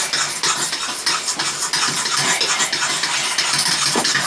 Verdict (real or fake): real